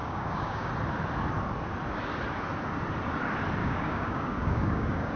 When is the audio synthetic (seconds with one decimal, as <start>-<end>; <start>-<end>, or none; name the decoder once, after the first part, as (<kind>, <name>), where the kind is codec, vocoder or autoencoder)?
0.0-0.7 (codec, DAC); 3.6-5.2